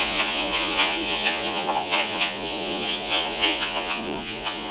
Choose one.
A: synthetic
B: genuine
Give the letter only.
A